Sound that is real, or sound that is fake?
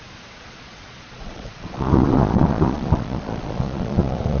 fake